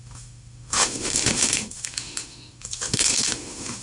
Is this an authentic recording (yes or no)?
no